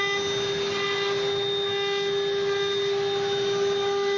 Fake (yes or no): no